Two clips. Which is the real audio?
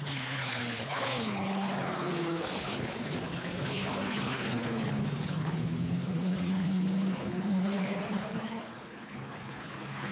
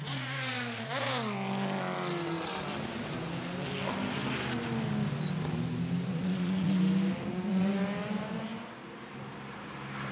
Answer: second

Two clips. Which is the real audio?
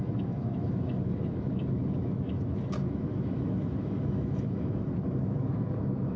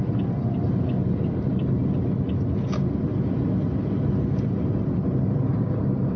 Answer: second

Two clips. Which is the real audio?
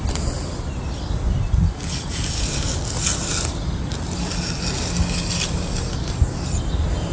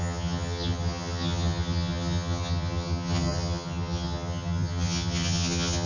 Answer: first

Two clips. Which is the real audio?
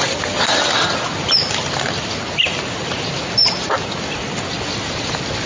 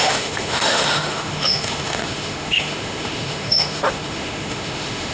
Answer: first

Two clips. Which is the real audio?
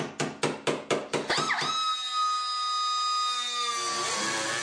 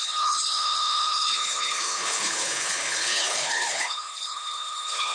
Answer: first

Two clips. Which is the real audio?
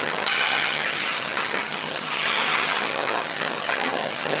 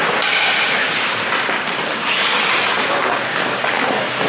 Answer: second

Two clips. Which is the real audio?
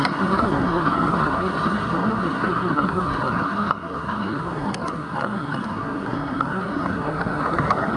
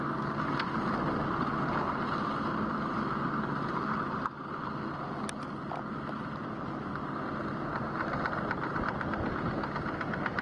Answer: second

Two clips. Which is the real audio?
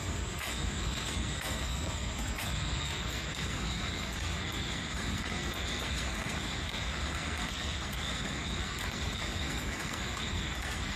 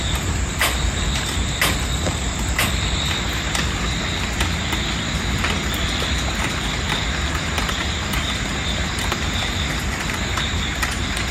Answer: second